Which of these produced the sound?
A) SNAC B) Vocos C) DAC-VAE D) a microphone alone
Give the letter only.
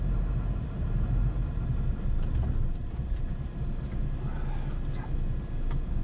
D